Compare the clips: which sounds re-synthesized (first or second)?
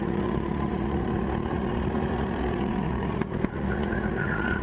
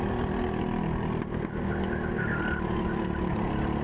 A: first